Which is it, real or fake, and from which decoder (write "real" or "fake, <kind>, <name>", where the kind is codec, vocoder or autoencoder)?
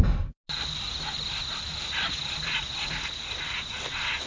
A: real